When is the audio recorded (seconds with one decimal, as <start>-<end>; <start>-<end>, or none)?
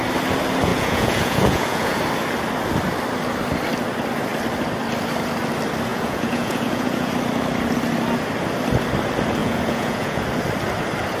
0.0-0.7; 2.0-5.9; 7.1-9.4; 10.2-11.2